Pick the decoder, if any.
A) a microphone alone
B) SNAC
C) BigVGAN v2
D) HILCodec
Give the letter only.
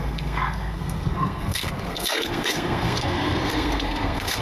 B